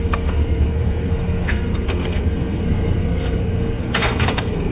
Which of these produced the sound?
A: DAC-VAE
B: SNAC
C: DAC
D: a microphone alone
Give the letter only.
B